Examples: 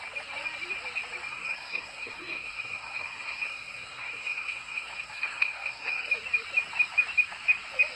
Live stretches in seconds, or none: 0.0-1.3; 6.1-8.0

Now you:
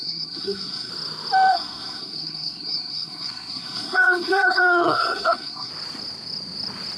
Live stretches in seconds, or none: 0.9-1.5; 5.7-7.0

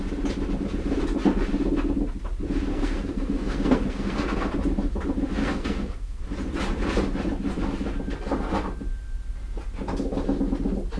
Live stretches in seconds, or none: 0.0-2.7; 4.5-5.4; 6.2-11.0